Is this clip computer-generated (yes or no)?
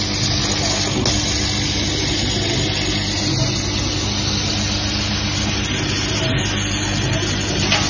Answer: no